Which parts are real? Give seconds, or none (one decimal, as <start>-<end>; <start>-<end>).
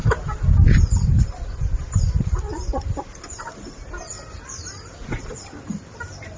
none